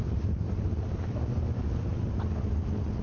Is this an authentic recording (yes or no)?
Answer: yes